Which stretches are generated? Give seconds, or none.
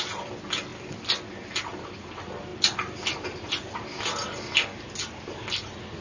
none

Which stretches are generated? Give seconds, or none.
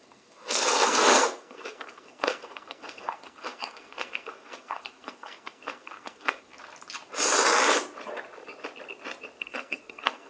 0.0-6.5 (codec, SNAC); 9.4-10.3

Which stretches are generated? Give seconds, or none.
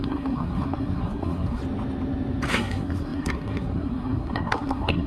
0.0-1.6 (codec, SNAC); 2.5-5.1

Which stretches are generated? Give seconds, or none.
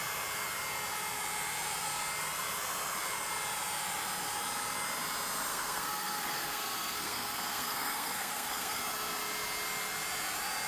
5.5-8.8 (codec, SNAC)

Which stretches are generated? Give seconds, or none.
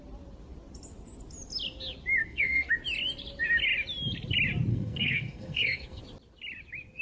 2.2-2.7 (codec, SNAC); 4.7-6.0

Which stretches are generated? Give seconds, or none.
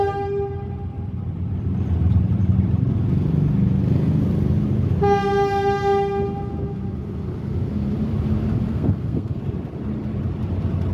8.7-9.4 (codec, SNAC)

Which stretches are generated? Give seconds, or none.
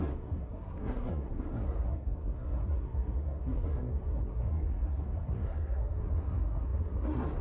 0.0-7.4 (codec, SNAC)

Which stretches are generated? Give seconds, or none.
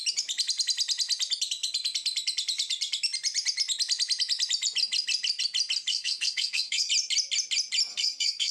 5.9-6.9 (codec, SNAC); 7.9-8.5